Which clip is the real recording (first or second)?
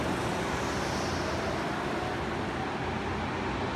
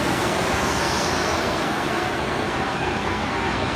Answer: first